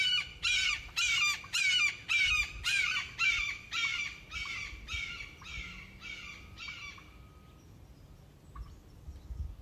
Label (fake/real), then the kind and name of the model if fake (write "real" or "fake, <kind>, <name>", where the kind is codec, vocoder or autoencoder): real